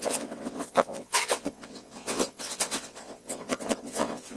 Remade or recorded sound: remade